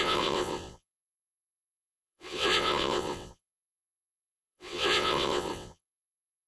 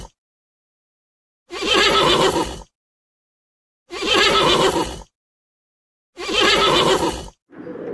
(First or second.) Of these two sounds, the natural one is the second